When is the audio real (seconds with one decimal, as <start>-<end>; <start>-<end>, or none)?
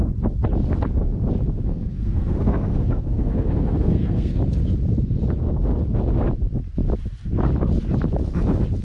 0.0-1.7; 4.4-8.8